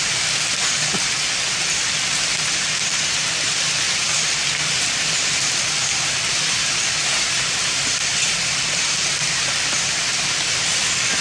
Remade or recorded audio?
recorded